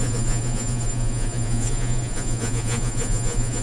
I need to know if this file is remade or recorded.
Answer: remade